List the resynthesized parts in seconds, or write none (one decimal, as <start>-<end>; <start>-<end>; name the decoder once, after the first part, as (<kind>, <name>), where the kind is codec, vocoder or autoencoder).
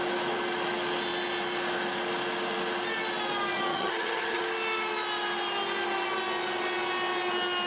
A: 3.7-4.4 (vocoder, HiFi-GAN)